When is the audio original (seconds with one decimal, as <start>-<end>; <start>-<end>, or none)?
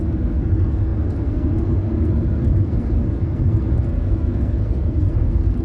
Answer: none